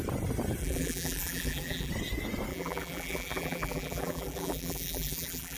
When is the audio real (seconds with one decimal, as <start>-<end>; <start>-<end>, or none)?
0.0-0.6; 1.9-2.5